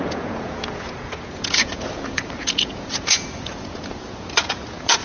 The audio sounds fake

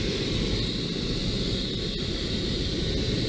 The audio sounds real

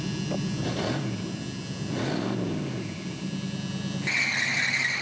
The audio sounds real